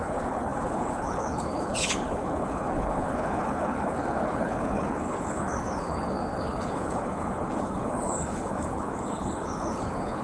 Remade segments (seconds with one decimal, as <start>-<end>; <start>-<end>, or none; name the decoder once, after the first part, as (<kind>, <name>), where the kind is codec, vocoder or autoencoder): 0.0-10.2 (codec, HILCodec)

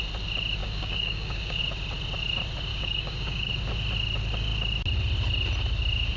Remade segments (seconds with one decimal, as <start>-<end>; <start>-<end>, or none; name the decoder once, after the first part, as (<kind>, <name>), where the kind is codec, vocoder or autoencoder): 0.6-1.6 (codec, DAC); 2.7-3.5

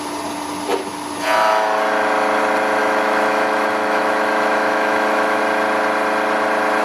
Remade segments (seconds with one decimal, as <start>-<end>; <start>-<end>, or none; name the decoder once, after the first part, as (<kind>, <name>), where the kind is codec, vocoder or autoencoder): 2.8-5.4 (autoencoder, DAC-VAE)

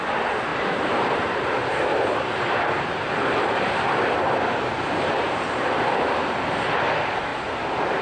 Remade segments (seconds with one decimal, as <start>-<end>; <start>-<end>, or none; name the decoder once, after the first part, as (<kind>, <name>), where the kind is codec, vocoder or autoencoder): 0.5-1.5 (vocoder, BigVGAN v2); 1.9-6.0; 7.3-8.0

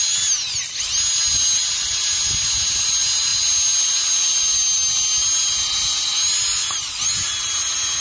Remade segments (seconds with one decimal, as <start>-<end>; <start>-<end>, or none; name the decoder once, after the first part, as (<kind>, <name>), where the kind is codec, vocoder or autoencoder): none

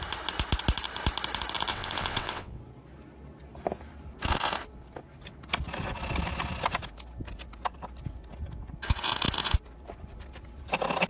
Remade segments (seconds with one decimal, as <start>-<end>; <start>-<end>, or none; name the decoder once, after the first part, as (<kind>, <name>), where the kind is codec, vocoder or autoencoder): 1.7-2.6 (vocoder, WaveNeXt)

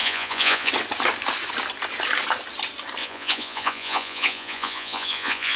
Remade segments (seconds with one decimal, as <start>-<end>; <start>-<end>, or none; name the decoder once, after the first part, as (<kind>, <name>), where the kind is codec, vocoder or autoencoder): 0.0-0.7 (vocoder, Vocos); 3.0-5.6

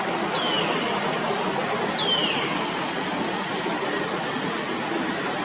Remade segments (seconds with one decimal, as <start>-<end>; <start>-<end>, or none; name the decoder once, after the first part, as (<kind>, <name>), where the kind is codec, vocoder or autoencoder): 2.2-4.0 (vocoder, BigVGAN v2)